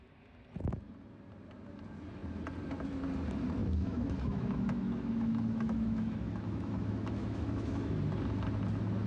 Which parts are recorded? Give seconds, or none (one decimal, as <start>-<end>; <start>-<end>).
0.0-3.6; 8.0-9.1